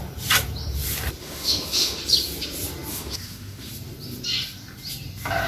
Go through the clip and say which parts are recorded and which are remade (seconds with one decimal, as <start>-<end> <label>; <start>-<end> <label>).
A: 0.0-1.2 recorded; 1.2-2.0 remade; 2.0-2.9 recorded; 2.9-3.7 remade; 3.7-5.5 recorded